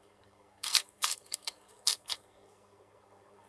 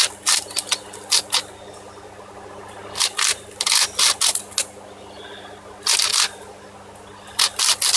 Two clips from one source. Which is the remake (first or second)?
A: first